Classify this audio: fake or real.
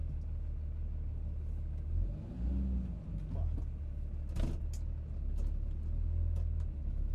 real